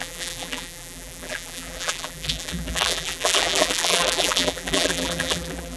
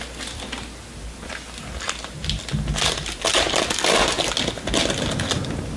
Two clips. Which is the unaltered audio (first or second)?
second